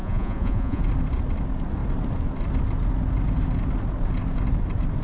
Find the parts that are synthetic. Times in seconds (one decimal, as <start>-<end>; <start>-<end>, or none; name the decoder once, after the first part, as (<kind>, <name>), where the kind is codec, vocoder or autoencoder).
0.0-0.8 (vocoder, Vocos)